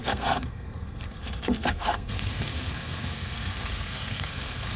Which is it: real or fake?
fake